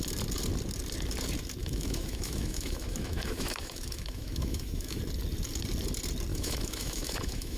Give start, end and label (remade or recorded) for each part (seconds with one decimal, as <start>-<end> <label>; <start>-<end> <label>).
0.0-1.6 recorded; 1.6-5.0 remade; 5.0-6.3 recorded; 6.3-7.6 remade